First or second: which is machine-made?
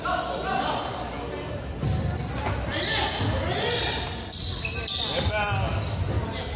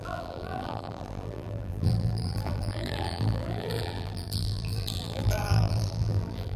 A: second